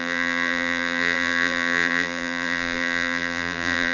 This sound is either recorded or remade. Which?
remade